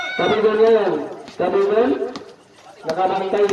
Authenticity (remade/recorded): recorded